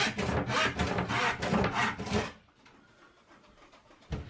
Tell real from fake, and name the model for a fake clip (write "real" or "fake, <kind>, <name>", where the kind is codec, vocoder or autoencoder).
real